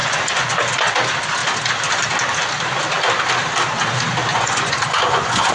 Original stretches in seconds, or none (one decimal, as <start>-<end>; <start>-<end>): 0.6-4.3